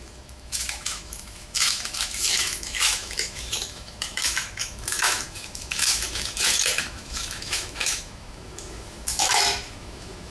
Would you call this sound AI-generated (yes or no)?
yes